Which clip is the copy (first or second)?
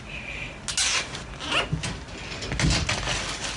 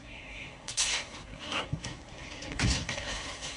second